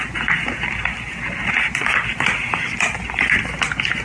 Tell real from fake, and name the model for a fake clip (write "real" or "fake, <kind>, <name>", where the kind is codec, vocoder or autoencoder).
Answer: real